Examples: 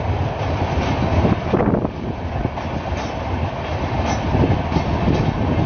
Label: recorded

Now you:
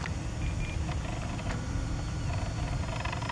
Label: recorded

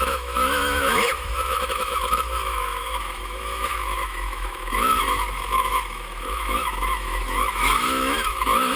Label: remade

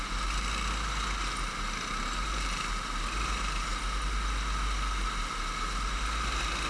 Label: recorded